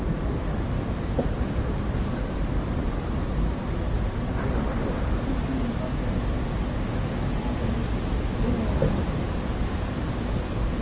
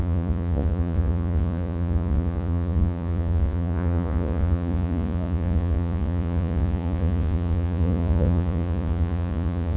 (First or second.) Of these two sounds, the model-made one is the second